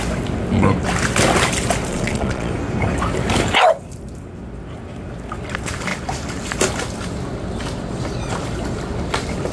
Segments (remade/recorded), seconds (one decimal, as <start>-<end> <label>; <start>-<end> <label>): 0.0-1.9 recorded; 1.9-2.5 remade; 2.5-9.5 recorded